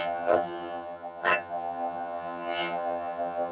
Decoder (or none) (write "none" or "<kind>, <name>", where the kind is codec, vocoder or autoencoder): vocoder, HiFi-GAN